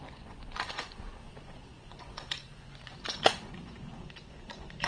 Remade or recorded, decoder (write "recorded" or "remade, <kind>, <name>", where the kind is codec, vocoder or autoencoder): remade, vocoder, Vocos